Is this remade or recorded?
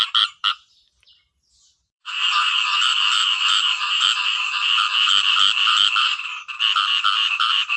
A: remade